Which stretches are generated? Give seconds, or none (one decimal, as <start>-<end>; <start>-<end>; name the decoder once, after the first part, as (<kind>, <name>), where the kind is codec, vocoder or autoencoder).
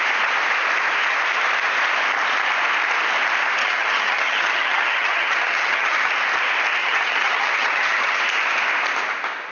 3.6-6.1 (vocoder, HiFi-GAN); 6.8-8.2